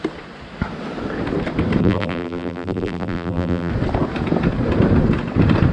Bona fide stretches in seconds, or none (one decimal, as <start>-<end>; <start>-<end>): 0.0-1.8; 3.7-5.7